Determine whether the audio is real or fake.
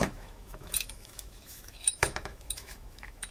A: fake